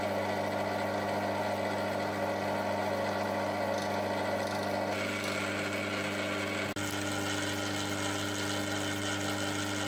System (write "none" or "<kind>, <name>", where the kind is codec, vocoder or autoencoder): none